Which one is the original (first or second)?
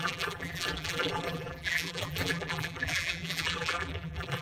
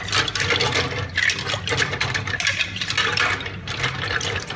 second